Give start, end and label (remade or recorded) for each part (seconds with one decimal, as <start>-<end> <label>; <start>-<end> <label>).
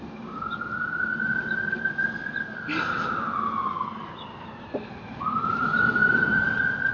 0.0-5.6 recorded; 5.6-6.3 remade; 6.3-6.9 recorded